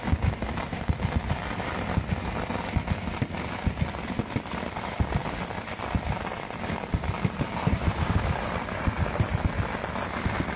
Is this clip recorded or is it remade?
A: recorded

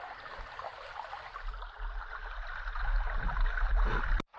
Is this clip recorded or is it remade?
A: recorded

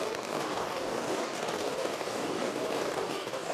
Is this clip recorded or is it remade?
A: remade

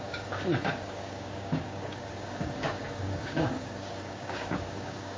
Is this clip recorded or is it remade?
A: remade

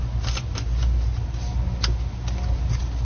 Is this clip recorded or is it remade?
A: recorded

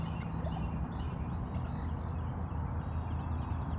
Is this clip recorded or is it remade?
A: recorded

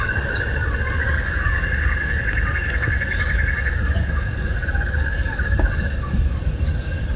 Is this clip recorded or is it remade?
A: remade